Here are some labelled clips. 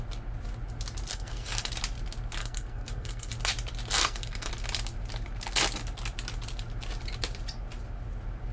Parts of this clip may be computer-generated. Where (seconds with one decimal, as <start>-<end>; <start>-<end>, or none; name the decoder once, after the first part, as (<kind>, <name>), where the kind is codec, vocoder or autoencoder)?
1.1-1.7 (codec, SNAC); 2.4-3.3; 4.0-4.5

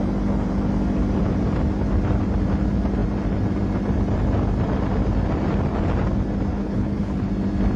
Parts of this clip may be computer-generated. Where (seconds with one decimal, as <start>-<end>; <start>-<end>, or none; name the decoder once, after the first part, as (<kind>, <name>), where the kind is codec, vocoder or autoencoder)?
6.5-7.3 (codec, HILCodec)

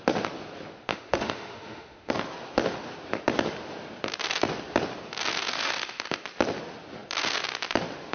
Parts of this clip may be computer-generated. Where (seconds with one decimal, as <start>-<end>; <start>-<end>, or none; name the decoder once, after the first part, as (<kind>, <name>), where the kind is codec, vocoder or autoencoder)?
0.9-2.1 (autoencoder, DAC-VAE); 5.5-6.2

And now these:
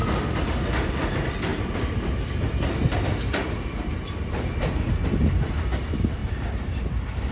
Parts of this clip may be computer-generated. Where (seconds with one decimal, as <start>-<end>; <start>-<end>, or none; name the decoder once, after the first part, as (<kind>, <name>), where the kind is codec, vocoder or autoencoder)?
none